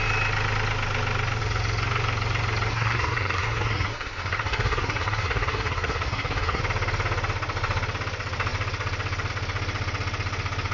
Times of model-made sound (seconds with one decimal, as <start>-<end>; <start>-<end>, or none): 2.7-6.6